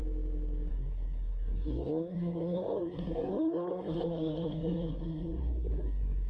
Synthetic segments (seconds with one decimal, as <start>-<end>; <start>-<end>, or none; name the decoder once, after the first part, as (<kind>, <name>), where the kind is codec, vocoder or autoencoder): 0.7-6.3 (codec, SNAC)

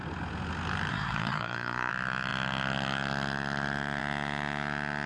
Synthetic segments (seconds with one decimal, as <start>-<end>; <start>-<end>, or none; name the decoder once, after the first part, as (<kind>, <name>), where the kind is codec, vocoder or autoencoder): 0.9-1.9 (codec, SNAC)